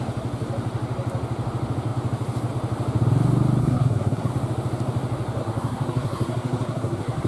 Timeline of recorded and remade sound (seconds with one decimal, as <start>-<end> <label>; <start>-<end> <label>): 0.0-3.6 recorded; 3.6-4.3 remade; 4.3-5.4 recorded; 5.4-7.3 remade